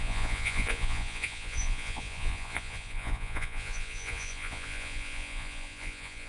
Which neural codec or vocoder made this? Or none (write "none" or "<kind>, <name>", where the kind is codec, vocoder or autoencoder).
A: vocoder, Vocos